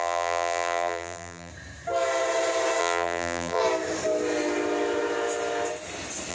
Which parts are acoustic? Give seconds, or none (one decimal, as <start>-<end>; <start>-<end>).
1.5-2.8; 3.6-6.3